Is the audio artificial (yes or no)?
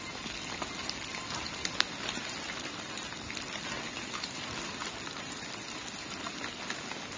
no